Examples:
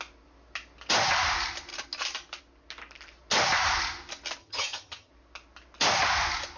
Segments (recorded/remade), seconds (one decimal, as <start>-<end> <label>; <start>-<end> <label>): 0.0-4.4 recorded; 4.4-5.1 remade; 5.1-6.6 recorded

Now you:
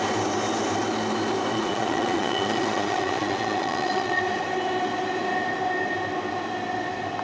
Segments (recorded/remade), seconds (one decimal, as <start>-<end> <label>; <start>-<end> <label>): 0.0-1.5 recorded; 1.5-4.2 remade; 4.2-7.2 recorded

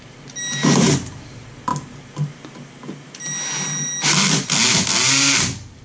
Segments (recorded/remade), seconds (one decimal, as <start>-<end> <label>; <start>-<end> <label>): 0.0-5.8 recorded

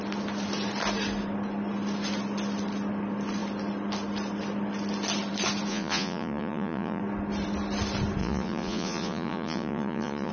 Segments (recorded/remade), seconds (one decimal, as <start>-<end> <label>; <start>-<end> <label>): 0.0-5.7 recorded; 5.7-7.0 remade; 7.0-8.2 recorded; 8.2-10.3 remade